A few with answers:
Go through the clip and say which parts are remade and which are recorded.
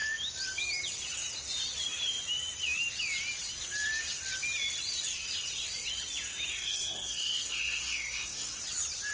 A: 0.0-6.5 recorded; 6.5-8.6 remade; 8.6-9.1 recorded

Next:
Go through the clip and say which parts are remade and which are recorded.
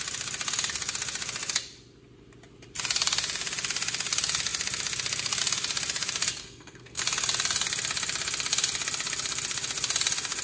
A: 0.0-6.4 recorded; 6.4-7.0 remade; 7.0-10.4 recorded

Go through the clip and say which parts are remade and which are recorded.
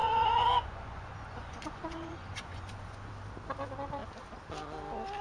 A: 0.0-3.1 remade; 3.1-5.2 recorded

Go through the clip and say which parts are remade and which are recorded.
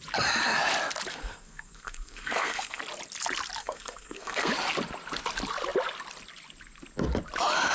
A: 0.0-1.1 recorded; 1.1-2.8 remade; 2.8-3.6 recorded; 3.6-4.5 remade; 4.5-7.7 recorded